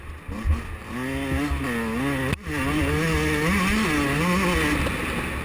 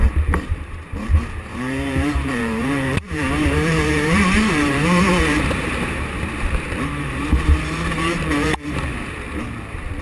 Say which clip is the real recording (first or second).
first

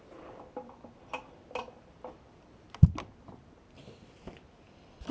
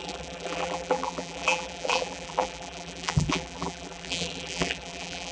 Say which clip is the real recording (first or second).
first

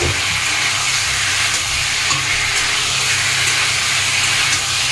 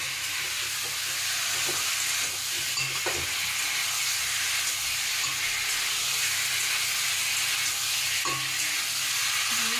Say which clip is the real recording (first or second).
second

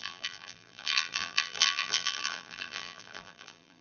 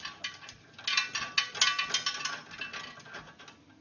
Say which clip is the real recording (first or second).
second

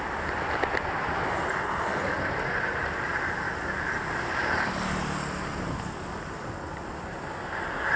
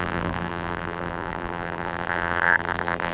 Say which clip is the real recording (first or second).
first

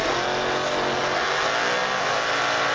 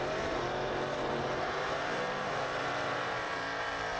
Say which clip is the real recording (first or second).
first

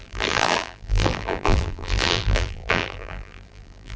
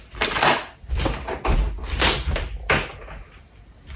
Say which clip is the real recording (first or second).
second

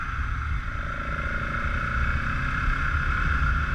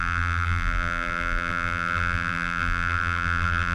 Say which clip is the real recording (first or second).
first